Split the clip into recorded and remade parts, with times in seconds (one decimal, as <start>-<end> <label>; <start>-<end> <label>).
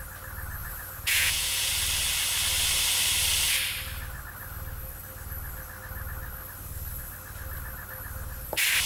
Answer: 0.0-0.6 recorded; 0.6-1.7 remade; 1.7-8.9 recorded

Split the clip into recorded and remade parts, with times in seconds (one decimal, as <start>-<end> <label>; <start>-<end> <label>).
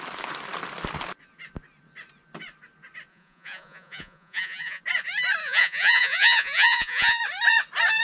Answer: 0.0-3.1 recorded; 3.1-4.8 remade; 4.8-5.4 recorded; 5.4-7.2 remade; 7.2-8.0 recorded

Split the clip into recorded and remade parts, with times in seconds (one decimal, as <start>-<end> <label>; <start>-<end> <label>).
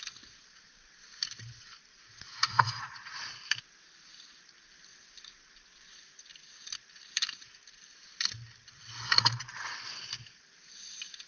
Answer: 0.0-1.9 recorded; 1.9-3.3 remade; 3.3-11.3 recorded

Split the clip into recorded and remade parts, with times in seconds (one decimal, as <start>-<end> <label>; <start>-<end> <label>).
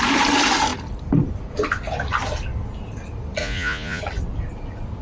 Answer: 0.0-3.4 recorded; 3.4-4.0 remade; 4.0-5.0 recorded